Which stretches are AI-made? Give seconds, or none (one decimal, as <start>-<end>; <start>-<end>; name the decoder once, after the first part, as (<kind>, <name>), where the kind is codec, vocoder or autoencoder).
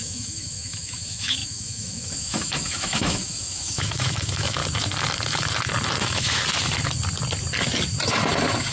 0.0-4.6 (autoencoder, DAC-VAE); 6.0-6.4